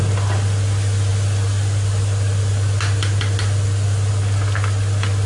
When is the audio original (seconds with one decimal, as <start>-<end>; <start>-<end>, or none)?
0.0-5.3